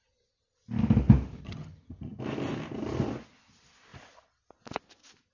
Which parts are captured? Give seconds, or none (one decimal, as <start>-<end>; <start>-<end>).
0.0-1.4; 2.2-5.3